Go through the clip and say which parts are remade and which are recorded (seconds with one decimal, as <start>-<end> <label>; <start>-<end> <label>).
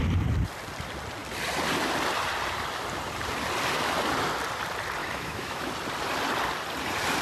0.0-5.0 recorded; 5.0-5.7 remade; 5.7-7.2 recorded